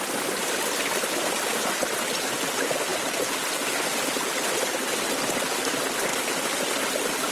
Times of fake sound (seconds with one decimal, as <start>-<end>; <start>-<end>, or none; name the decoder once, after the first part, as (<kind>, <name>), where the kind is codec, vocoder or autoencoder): none